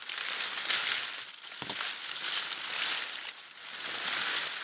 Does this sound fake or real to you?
real